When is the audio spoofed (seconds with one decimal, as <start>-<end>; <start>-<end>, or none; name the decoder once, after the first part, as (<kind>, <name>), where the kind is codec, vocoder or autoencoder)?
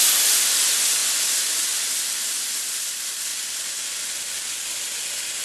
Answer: 0.0-1.0 (vocoder, BigVGAN v2); 1.9-3.3